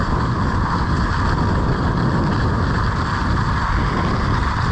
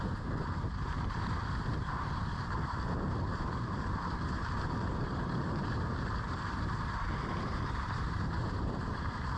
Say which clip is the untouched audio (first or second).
first